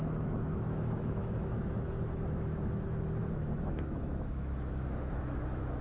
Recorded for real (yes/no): no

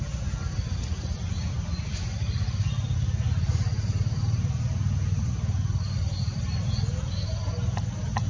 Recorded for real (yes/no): yes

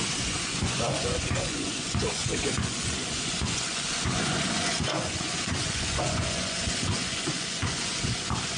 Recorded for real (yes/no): no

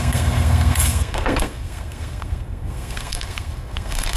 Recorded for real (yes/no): no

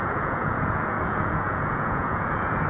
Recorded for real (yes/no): no